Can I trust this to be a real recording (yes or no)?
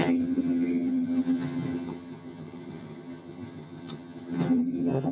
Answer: no